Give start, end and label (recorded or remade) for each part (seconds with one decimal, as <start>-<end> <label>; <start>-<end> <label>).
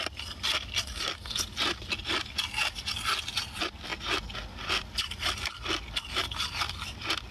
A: 0.0-7.3 recorded